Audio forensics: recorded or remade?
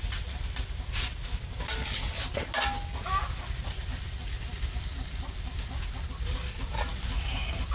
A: recorded